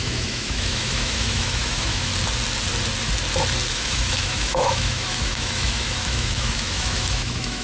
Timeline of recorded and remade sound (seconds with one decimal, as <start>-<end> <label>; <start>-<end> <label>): 0.0-2.1 remade; 2.1-3.7 recorded; 3.7-7.6 remade

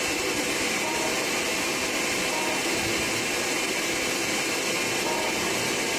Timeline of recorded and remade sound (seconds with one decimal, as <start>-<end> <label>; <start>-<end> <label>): 0.0-6.0 recorded

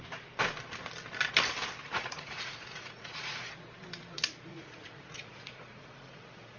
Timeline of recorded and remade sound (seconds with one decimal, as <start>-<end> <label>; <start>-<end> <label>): 0.0-1.8 recorded; 1.8-3.5 remade; 3.5-4.5 recorded; 4.5-6.6 remade

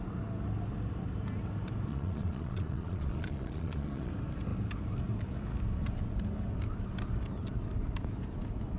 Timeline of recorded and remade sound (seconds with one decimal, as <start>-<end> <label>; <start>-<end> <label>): 0.0-1.9 recorded; 1.9-4.1 remade; 4.1-8.8 recorded

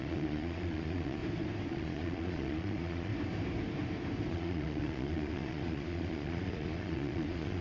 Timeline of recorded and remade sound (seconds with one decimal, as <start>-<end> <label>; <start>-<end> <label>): 0.0-1.2 remade; 1.2-1.7 recorded; 1.7-3.1 remade; 3.1-4.3 recorded; 4.3-7.6 remade